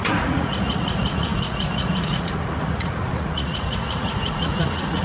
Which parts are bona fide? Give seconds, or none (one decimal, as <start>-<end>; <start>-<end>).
none